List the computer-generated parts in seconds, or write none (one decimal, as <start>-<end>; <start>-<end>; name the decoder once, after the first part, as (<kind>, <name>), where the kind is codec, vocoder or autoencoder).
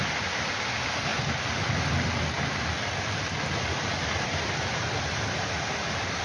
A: none